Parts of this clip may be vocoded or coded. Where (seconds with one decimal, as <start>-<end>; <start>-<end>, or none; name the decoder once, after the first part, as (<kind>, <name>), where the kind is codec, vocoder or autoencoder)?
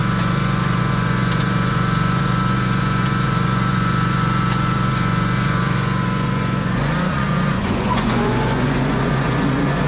0.0-9.9 (vocoder, Vocos)